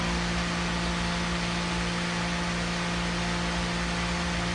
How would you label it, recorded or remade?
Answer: recorded